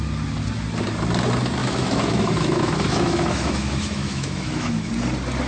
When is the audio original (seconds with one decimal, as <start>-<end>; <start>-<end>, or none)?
0.0-1.6; 4.9-5.5